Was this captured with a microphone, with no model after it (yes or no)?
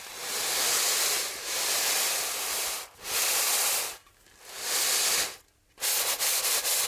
yes